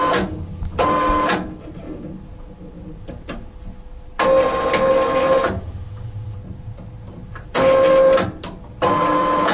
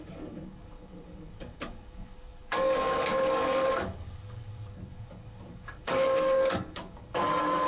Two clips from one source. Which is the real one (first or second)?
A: first